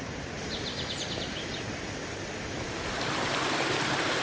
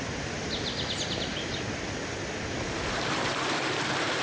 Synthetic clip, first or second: first